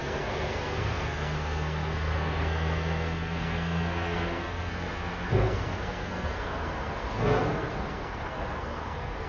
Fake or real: fake